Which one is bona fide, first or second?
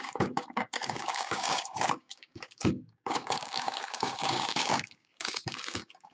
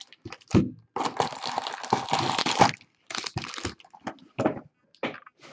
second